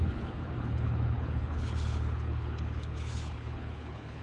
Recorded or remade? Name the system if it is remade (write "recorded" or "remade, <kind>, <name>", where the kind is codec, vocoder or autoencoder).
remade, codec, HILCodec